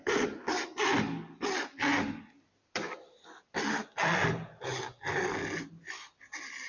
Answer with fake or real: real